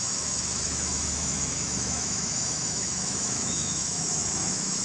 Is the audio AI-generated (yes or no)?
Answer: yes